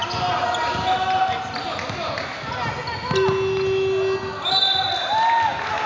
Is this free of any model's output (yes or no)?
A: yes